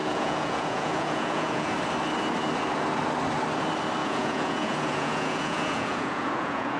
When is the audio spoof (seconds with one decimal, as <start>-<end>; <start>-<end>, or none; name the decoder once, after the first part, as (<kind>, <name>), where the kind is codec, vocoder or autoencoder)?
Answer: 0.0-1.7 (vocoder, Vocos); 4.0-6.8